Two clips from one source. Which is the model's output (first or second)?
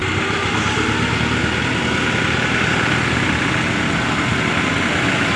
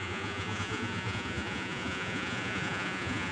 second